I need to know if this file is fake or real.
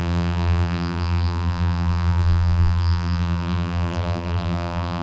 fake